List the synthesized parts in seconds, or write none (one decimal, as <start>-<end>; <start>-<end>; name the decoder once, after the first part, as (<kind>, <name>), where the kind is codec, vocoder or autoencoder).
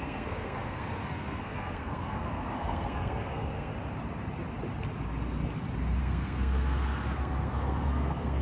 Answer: 0.0-3.7 (codec, SNAC); 6.0-8.4